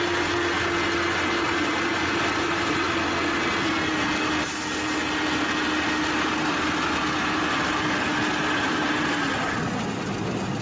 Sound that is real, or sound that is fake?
real